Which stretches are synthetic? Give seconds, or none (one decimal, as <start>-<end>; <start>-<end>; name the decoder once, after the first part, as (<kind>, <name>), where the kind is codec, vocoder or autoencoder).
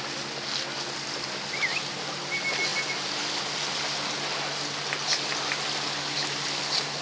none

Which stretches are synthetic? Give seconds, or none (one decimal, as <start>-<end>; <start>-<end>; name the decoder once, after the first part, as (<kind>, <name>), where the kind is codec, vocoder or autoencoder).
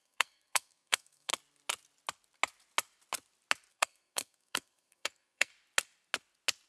0.0-1.3 (codec, SNAC); 3.7-5.5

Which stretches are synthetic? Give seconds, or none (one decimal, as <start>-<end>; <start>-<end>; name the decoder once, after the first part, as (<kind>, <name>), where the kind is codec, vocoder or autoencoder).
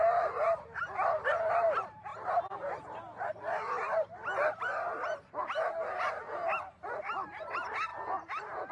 none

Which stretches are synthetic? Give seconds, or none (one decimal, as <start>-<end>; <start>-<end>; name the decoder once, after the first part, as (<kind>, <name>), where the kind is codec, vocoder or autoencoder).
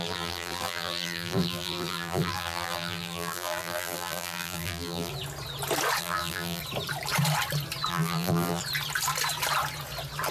0.0-5.1 (vocoder, BigVGAN v2); 6.0-6.6; 7.9-8.6